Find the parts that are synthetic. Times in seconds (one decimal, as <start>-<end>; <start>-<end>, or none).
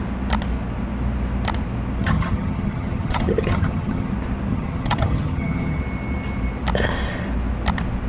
2.0-4.1; 4.5-5.8